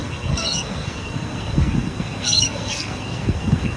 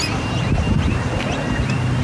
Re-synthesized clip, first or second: first